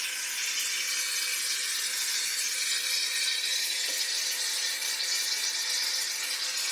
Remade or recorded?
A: recorded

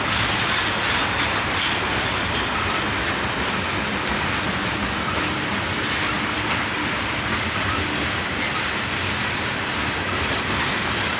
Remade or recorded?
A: recorded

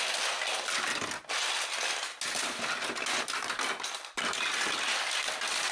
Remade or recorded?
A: recorded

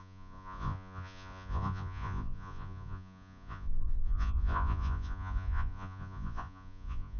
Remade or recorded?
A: remade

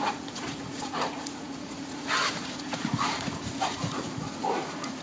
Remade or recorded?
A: remade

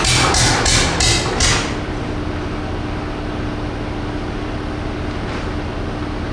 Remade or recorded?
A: recorded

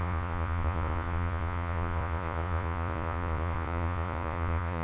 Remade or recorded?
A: remade